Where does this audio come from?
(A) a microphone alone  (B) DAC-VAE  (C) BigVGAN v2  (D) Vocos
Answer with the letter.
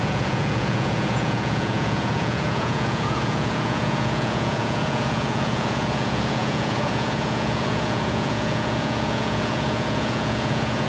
D